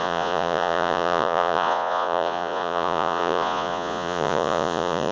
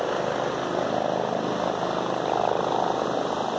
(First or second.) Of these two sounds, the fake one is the first